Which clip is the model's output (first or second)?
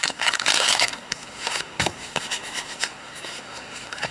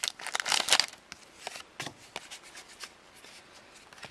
first